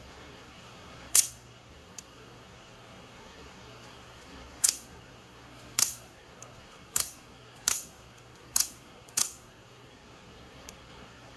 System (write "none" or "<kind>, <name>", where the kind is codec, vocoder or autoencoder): codec, SNAC